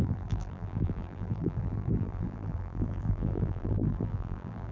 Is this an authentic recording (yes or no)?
no